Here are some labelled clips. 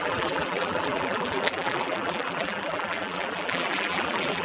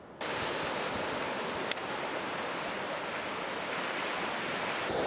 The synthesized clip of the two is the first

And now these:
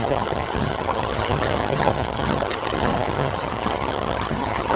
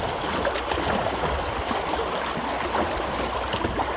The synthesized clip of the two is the first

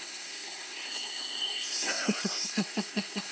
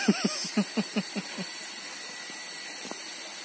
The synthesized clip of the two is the first